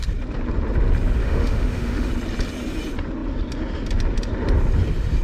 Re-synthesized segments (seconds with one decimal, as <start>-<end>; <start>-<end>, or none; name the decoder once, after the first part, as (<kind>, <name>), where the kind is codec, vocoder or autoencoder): 1.2-2.1 (autoencoder, DAC-VAE)